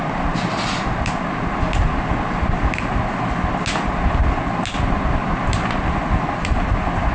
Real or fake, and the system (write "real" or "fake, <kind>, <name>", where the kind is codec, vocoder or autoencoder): real